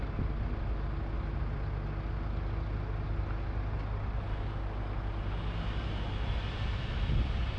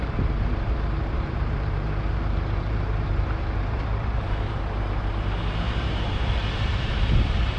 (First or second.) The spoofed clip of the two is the second